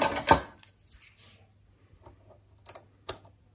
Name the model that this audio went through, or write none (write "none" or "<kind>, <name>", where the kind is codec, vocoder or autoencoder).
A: none